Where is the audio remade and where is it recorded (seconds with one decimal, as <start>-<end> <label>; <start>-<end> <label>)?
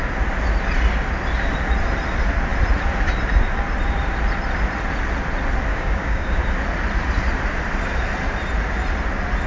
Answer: 0.0-5.7 recorded; 5.7-6.4 remade; 6.4-9.5 recorded